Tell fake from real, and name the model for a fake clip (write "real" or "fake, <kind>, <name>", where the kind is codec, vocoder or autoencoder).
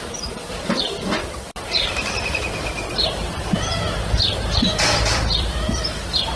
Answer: fake, vocoder, BigVGAN v2